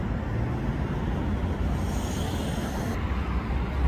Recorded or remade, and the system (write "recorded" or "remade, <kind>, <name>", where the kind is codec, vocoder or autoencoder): recorded